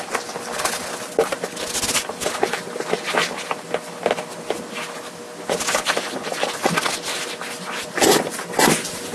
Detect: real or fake real